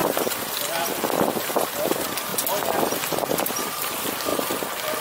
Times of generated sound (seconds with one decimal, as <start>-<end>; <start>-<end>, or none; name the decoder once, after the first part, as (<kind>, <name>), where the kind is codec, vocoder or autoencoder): 0.0-2.3 (vocoder, BigVGAN v2); 3.5-4.3